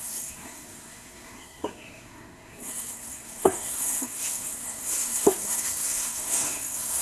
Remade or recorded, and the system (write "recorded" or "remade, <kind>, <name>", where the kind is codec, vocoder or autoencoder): remade, codec, SNAC